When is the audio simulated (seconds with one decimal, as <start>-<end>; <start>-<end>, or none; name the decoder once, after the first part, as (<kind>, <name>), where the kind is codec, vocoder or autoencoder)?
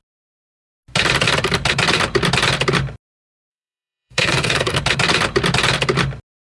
3.5-4.8 (codec, SNAC)